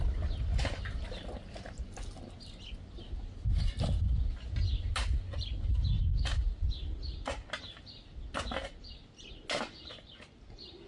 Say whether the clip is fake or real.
real